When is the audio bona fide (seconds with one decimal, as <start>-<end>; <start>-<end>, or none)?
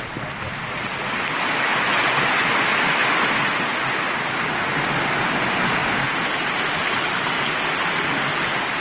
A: 0.0-5.8; 6.6-8.8